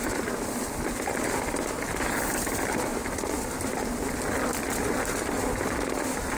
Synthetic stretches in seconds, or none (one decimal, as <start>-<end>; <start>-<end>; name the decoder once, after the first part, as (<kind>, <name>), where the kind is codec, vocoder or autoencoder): 2.9-3.5 (vocoder, BigVGAN v2)